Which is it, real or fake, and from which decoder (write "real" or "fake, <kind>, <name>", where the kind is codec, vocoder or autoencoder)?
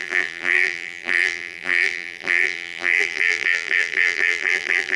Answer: fake, vocoder, BigVGAN v2